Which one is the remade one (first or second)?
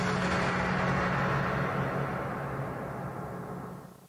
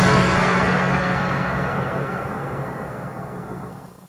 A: second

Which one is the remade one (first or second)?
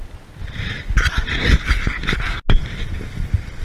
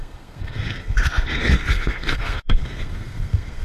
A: second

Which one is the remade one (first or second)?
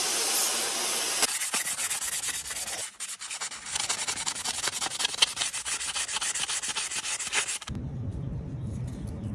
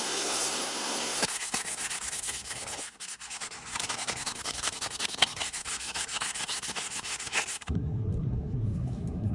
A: second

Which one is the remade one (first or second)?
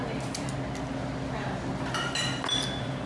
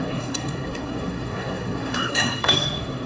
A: second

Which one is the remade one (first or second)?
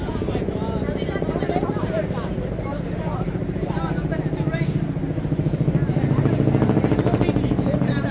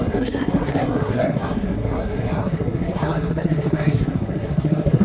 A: second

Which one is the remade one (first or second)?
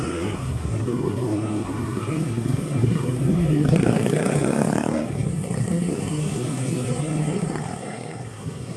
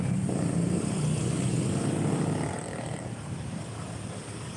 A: first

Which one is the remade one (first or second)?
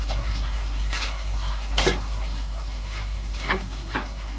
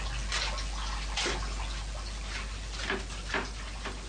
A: first